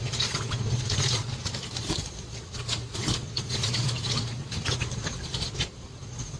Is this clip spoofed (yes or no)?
yes